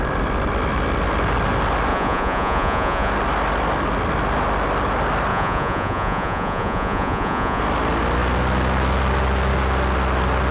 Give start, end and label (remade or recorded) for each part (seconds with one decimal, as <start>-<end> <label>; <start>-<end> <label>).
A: 0.0-1.9 recorded; 1.9-3.1 remade; 3.1-5.3 recorded; 5.3-7.6 remade; 7.6-10.5 recorded